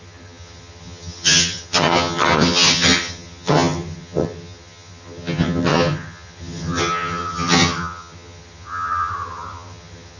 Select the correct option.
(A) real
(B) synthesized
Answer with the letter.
B